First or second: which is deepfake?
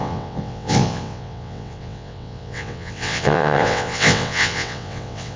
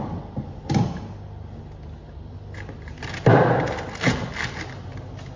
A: first